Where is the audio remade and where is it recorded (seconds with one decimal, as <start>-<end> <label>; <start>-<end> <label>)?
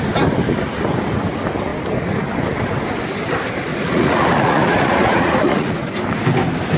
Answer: 0.0-3.7 recorded; 3.7-5.9 remade; 5.9-6.8 recorded